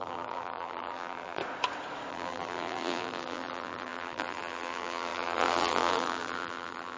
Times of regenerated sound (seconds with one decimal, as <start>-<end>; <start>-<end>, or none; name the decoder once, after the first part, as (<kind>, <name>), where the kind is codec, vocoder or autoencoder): 0.0-1.4 (vocoder, BigVGAN v2); 2.1-7.0